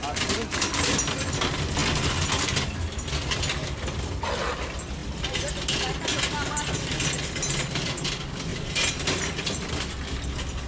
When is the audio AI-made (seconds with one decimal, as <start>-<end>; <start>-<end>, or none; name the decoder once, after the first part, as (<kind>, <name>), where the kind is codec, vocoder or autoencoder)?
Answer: 5.0-5.5 (vocoder, BigVGAN v2); 8.5-9.7